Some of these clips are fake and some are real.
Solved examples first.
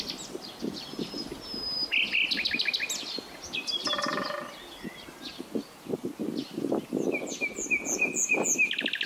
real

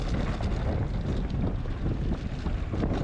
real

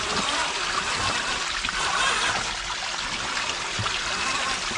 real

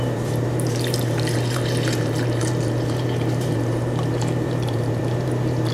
fake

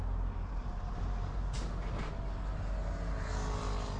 real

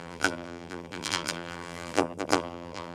fake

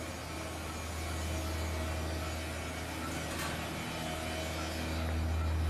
real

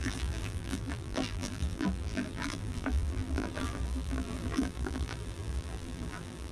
fake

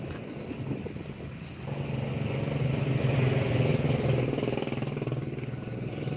real